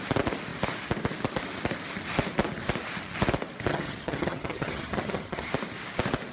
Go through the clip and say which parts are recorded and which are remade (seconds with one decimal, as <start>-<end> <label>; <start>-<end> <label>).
0.0-3.7 recorded; 3.7-5.5 remade; 5.5-6.3 recorded